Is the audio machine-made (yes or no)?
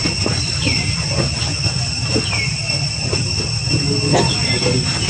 no